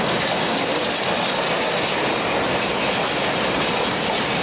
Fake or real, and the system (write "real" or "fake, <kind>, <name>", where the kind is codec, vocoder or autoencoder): real